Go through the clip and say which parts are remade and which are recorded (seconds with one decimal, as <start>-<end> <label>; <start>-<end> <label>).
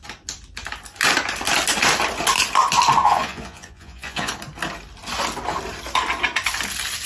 0.0-3.0 recorded; 3.0-4.3 remade; 4.3-7.1 recorded